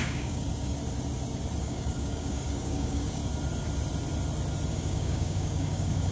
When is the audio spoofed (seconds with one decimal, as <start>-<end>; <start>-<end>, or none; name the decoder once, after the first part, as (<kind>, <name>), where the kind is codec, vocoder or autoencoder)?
0.0-0.8 (codec, DAC); 1.6-3.2; 4.7-6.1